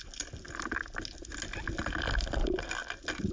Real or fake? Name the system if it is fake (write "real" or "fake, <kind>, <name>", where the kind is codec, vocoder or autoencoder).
real